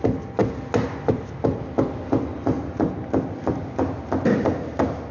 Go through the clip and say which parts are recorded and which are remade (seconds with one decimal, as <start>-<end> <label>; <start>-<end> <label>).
0.0-5.1 recorded